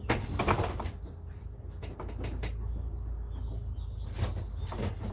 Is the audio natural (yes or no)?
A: yes